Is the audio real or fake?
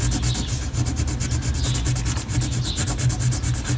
real